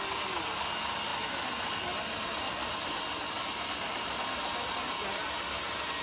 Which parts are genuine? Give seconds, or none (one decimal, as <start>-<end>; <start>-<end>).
0.0-6.0

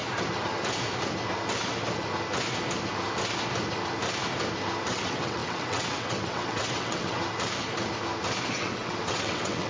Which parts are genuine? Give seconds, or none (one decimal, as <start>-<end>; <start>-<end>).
0.0-4.9; 7.2-8.5

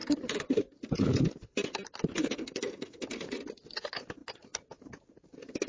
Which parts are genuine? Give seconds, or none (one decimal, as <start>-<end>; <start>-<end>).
0.0-2.2; 3.0-5.7

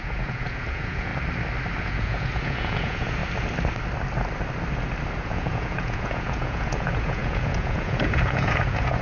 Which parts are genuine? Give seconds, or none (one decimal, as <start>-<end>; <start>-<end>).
1.1-1.8; 3.2-5.2